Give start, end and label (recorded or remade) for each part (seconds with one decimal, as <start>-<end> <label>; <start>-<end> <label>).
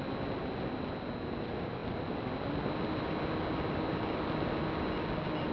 0.0-5.5 recorded